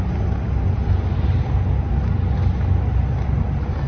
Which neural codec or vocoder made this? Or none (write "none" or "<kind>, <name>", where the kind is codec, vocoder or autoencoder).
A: none